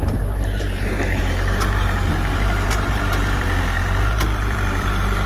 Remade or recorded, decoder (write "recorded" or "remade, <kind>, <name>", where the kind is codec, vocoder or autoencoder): remade, vocoder, BigVGAN v2